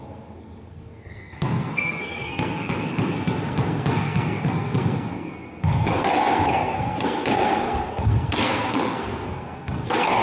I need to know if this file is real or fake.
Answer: fake